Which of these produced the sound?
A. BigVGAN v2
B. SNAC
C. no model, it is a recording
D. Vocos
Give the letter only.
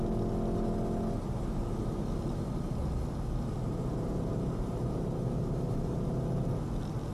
C